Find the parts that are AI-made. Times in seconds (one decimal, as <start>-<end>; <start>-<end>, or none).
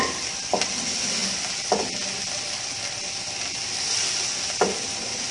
none